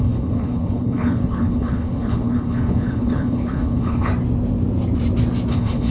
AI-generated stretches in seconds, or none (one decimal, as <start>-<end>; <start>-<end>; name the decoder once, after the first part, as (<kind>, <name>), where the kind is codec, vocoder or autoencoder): 0.0-4.1 (codec, HILCodec); 5.5-5.9